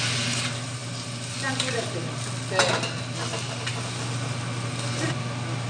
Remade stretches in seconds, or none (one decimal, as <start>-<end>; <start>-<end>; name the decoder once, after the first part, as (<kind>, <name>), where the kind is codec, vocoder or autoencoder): none